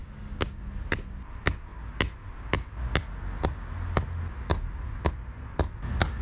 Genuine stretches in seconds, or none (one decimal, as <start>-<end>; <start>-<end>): 0.6-6.2